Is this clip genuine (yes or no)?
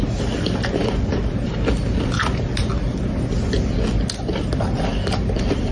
yes